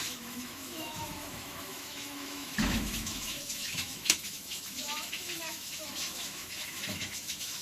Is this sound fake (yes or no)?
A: yes